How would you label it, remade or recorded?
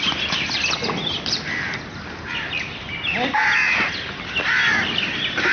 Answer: recorded